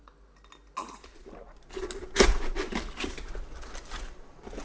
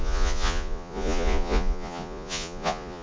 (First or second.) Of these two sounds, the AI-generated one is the second